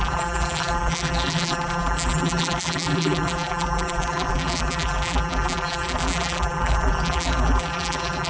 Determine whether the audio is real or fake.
fake